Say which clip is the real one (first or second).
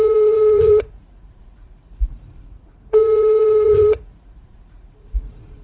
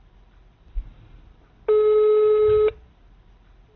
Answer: second